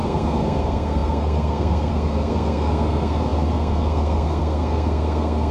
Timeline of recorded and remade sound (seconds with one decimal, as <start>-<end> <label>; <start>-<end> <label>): 0.0-5.5 remade